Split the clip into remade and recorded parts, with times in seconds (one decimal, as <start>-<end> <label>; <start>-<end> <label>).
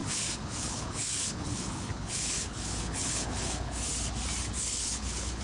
0.0-3.9 remade; 3.9-4.6 recorded; 4.6-5.4 remade